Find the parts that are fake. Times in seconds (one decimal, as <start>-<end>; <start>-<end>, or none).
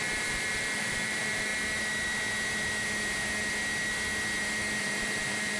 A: 0.0-1.5; 4.8-5.6